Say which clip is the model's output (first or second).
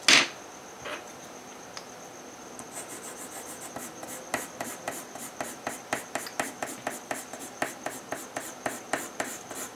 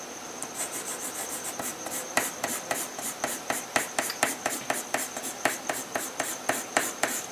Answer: second